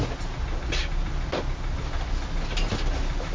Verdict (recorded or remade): recorded